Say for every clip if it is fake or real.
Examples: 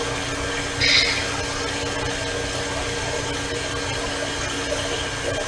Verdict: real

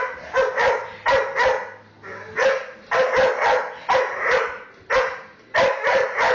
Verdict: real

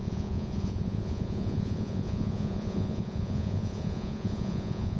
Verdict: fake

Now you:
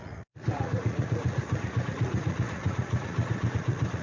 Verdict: fake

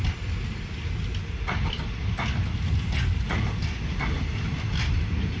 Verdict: real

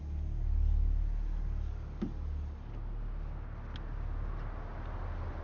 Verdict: real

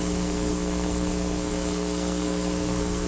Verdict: fake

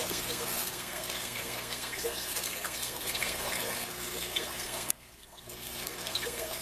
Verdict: fake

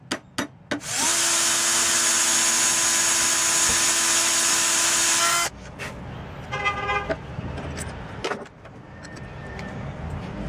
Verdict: real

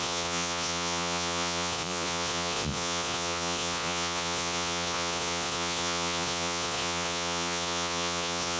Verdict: fake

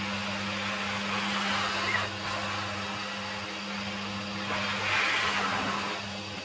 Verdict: real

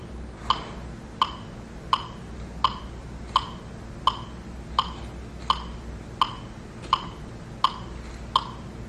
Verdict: real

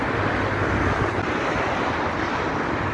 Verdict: real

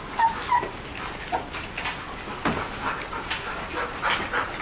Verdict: real